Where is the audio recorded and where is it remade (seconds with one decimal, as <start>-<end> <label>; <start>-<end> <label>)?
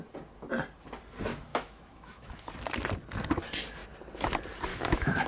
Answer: 0.0-1.5 recorded; 1.5-2.5 remade; 2.5-4.7 recorded; 4.7-5.3 remade